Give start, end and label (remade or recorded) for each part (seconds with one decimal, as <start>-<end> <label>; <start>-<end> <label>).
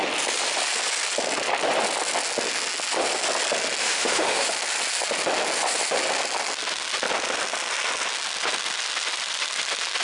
0.0-3.8 recorded; 3.8-4.5 remade; 4.5-10.0 recorded